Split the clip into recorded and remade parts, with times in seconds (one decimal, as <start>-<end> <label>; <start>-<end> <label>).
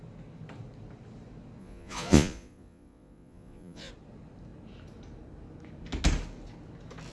0.0-1.6 recorded; 1.6-3.9 remade; 3.9-7.1 recorded